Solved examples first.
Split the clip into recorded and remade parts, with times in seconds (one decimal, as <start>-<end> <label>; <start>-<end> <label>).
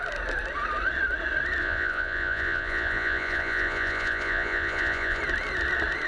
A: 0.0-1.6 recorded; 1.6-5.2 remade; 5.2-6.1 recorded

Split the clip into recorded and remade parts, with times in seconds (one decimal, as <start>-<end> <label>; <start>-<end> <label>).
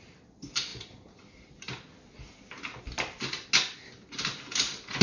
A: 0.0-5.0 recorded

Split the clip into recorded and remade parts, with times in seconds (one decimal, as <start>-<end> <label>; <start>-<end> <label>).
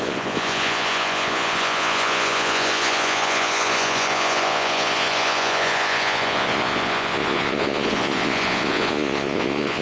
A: 0.0-9.8 remade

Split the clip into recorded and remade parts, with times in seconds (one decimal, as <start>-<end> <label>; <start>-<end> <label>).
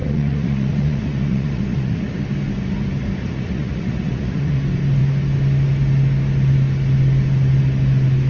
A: 0.0-2.1 remade; 2.1-3.2 recorded; 3.2-4.6 remade; 4.6-8.3 recorded